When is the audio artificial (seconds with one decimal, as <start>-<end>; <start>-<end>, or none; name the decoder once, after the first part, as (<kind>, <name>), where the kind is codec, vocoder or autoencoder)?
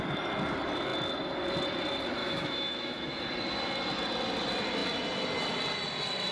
2.2-3.3 (autoencoder, DAC-VAE)